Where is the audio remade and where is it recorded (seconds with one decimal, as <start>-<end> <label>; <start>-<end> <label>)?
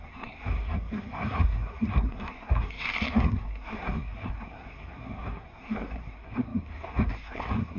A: 0.0-7.8 remade